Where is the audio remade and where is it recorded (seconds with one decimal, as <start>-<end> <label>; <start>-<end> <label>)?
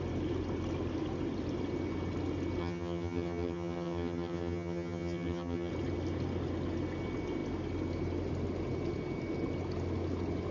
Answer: 0.0-2.6 recorded; 2.6-5.7 remade; 5.7-10.5 recorded